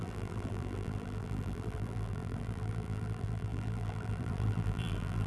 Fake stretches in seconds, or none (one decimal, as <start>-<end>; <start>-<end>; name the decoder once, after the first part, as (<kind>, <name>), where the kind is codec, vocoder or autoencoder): 0.0-5.3 (vocoder, BigVGAN v2)